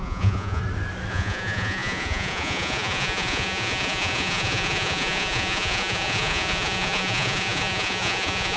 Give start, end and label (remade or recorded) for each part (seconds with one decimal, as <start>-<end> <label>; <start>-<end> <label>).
0.0-0.6 remade; 0.6-1.1 recorded; 1.1-8.6 remade